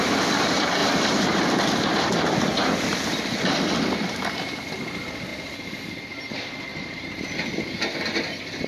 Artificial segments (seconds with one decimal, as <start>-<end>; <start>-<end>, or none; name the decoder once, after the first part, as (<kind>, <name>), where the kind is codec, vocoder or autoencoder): 0.8-3.0 (vocoder, BigVGAN v2); 6.7-7.2